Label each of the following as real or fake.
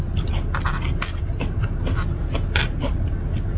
real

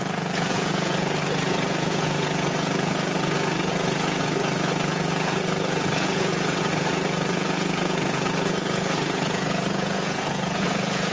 fake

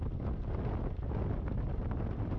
real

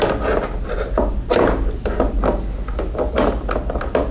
real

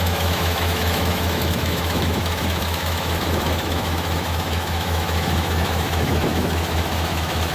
fake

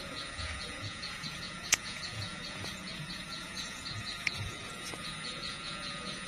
fake